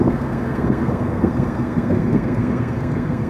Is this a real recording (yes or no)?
no